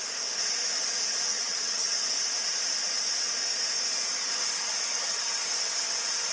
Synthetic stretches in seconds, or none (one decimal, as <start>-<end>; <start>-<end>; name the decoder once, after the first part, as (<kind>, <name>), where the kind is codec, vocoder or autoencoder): 1.3-2.0 (vocoder, HiFi-GAN); 4.9-5.5